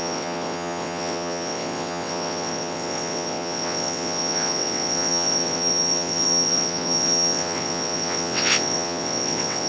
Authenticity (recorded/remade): remade